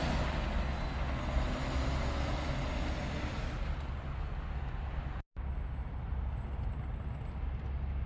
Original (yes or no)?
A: yes